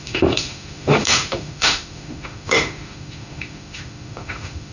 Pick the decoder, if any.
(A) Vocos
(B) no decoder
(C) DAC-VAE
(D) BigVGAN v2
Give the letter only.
C